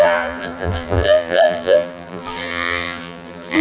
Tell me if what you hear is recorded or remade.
remade